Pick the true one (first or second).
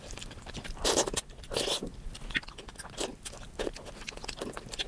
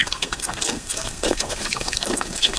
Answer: first